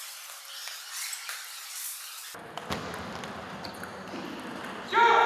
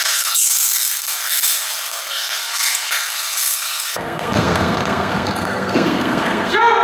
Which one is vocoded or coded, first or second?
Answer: second